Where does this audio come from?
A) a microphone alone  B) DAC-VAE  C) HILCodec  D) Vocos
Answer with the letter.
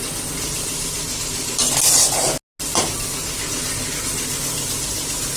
A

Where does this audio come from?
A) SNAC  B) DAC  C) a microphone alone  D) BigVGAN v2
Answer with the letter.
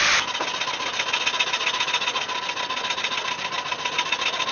C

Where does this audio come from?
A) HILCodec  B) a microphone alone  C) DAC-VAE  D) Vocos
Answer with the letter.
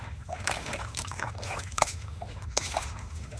C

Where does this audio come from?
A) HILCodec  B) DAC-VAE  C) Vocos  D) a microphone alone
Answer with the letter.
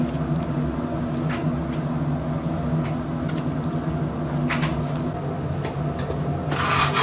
D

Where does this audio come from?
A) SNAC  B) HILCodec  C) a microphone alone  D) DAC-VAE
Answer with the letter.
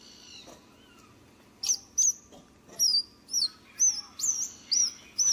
C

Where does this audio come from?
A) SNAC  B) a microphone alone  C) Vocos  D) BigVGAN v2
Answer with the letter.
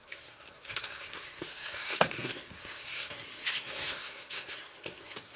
A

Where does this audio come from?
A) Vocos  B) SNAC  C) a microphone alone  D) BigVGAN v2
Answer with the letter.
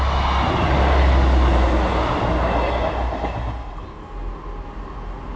C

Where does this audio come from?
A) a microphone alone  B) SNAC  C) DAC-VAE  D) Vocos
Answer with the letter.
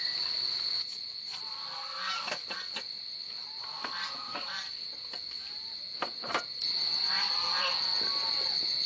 A